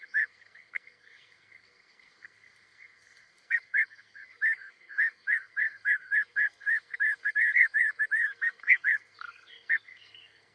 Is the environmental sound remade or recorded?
remade